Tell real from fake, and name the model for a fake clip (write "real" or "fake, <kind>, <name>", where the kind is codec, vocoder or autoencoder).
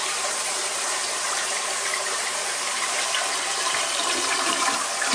fake, vocoder, BigVGAN v2